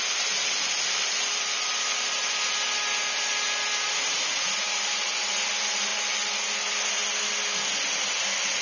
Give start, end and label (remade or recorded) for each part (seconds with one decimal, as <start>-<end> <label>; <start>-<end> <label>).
0.0-8.6 recorded